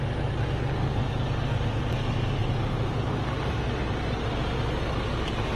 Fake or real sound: real